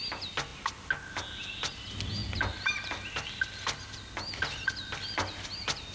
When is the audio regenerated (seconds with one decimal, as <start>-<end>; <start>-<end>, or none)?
none